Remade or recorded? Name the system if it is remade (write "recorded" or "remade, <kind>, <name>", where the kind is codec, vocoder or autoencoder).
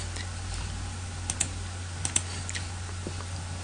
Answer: recorded